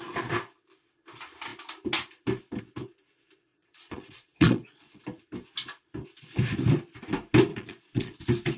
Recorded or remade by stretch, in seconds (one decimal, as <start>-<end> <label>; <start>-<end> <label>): 0.0-3.5 recorded; 3.5-5.0 remade; 5.0-7.5 recorded; 7.5-8.2 remade; 8.2-8.6 recorded